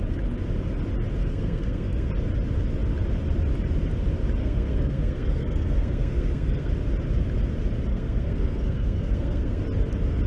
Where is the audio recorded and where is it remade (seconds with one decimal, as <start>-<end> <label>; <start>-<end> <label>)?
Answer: 0.0-1.2 recorded; 1.2-2.1 remade; 2.1-4.4 recorded; 4.4-6.7 remade; 6.7-7.9 recorded; 7.9-9.6 remade; 9.6-10.3 recorded